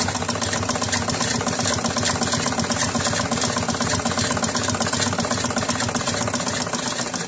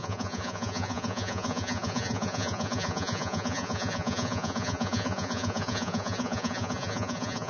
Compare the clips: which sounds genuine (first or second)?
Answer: first